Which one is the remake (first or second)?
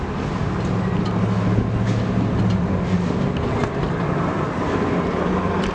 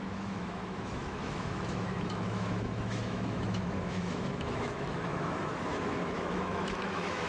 second